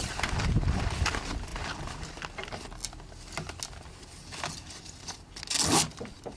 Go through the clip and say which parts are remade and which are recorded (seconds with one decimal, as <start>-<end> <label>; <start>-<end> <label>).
0.0-6.4 recorded